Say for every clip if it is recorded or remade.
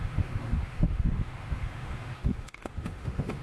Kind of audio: remade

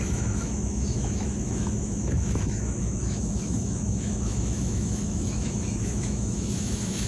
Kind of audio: remade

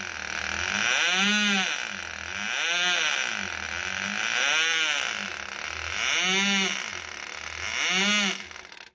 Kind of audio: recorded